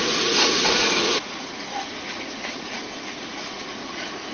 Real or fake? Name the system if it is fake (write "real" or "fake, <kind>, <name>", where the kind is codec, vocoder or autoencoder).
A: fake, vocoder, Vocos